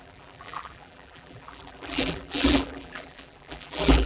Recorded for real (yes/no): no